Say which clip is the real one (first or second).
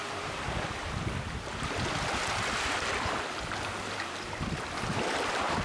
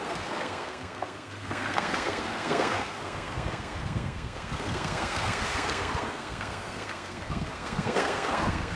first